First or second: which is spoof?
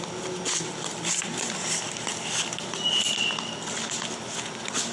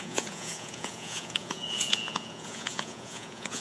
second